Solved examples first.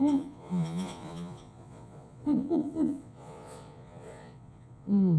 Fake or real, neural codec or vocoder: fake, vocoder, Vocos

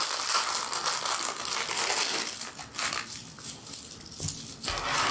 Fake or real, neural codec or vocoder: real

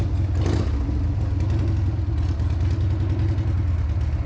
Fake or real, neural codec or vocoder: real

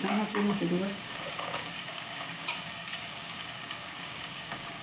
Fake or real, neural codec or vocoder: fake, codec, DAC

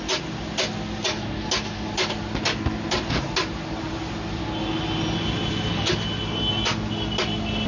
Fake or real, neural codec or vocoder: real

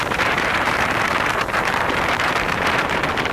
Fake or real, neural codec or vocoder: fake, vocoder, BigVGAN v2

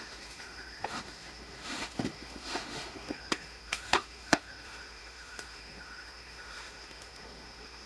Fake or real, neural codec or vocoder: fake, autoencoder, DAC-VAE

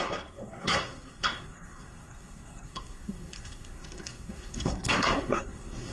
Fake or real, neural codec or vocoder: fake, codec, SNAC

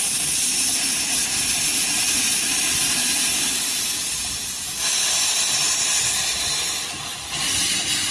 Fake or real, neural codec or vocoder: real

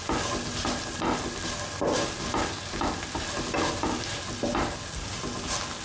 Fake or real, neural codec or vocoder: real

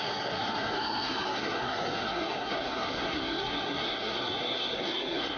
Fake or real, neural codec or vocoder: fake, codec, SNAC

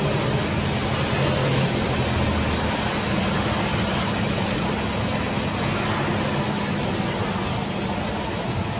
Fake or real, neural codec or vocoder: real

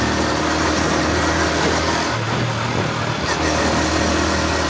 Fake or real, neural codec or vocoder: real